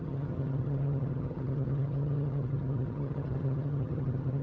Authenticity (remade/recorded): remade